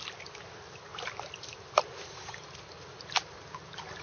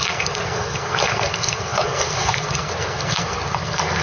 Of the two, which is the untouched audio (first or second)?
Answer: first